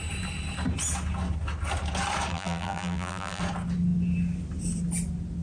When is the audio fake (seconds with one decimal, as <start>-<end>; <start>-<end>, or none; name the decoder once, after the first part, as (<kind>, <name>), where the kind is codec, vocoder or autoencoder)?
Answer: 2.3-3.4 (vocoder, BigVGAN v2)

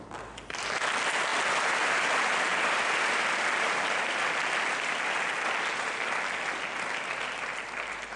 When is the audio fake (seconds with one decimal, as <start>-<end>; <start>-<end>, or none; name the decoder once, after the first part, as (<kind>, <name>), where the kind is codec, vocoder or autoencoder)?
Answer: 1.3-1.9 (vocoder, BigVGAN v2); 2.5-4.2

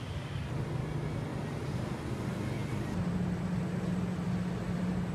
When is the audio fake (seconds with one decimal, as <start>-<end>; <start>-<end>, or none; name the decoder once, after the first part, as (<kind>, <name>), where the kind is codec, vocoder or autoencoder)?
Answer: 1.3-2.0 (vocoder, BigVGAN v2)

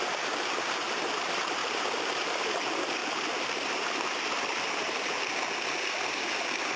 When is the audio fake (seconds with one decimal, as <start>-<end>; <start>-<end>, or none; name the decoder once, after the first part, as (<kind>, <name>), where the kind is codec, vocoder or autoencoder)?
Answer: 1.6-2.3 (vocoder, BigVGAN v2); 3.0-5.0

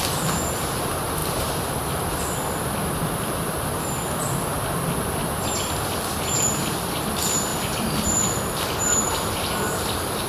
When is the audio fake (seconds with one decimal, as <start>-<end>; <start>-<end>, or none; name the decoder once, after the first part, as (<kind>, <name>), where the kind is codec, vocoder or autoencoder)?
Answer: 7.5-10.3 (vocoder, BigVGAN v2)